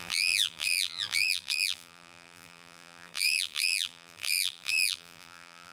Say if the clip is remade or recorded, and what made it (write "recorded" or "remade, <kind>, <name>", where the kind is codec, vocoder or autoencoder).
remade, vocoder, BigVGAN v2